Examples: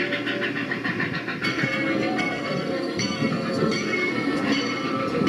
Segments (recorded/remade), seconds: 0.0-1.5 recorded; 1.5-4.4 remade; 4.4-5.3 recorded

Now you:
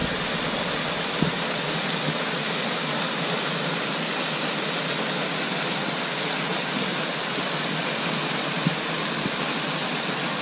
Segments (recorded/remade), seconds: 0.0-10.4 recorded